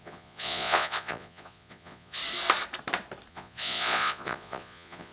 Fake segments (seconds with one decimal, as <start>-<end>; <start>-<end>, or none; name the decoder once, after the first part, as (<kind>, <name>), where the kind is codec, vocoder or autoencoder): 0.0-2.2 (vocoder, Vocos); 3.3-5.1